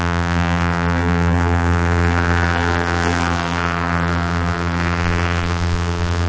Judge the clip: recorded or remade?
remade